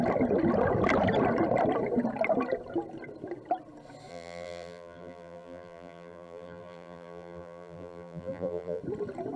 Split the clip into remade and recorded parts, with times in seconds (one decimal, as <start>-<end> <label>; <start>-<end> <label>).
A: 0.0-4.1 recorded; 4.1-8.8 remade; 8.8-9.4 recorded